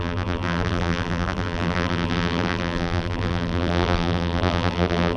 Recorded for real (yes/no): no